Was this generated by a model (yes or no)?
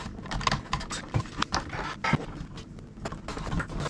no